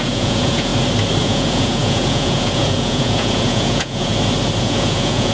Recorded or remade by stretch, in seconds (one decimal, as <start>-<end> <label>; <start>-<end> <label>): 0.0-0.7 remade; 0.7-1.2 recorded; 1.2-4.1 remade; 4.1-4.6 recorded; 4.6-5.3 remade